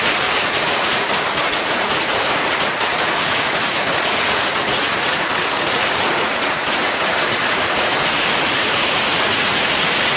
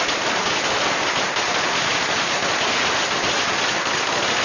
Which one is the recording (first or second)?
second